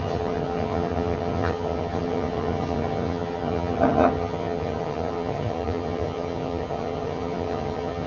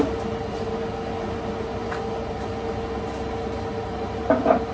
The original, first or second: second